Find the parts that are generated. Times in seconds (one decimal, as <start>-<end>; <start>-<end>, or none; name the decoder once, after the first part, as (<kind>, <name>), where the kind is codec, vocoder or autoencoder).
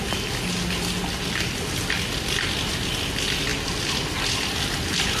none